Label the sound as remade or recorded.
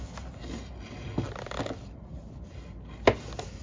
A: recorded